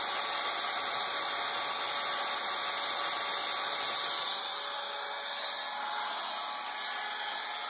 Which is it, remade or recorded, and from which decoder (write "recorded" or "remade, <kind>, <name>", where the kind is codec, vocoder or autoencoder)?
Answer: recorded